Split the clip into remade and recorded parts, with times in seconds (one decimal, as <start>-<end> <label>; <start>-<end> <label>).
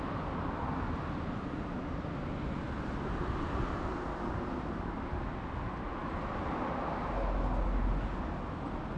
0.0-9.0 recorded